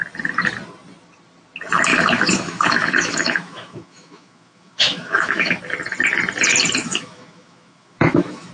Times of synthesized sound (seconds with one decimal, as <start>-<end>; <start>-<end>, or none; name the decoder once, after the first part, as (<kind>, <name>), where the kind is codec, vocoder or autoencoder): 1.9-5.6 (autoencoder, DAC-VAE); 6.8-8.5